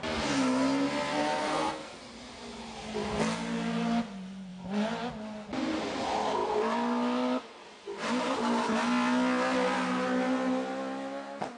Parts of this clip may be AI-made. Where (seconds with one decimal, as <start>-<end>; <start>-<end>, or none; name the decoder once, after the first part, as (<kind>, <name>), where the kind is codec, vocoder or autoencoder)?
1.2-2.0 (codec, SNAC)